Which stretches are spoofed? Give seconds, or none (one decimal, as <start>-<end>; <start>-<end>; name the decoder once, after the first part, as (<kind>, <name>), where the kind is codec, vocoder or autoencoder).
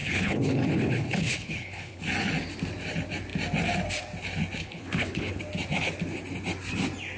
0.0-2.0 (codec, HILCodec); 4.6-5.4